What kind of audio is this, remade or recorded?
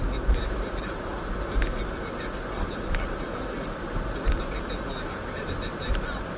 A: recorded